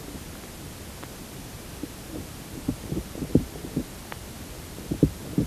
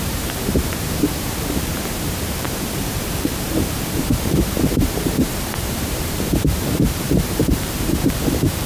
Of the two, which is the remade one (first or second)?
second